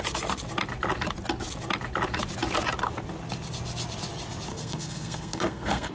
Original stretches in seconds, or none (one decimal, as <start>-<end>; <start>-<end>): 0.0-4.5